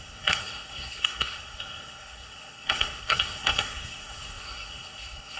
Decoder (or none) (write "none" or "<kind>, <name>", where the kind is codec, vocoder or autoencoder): codec, SNAC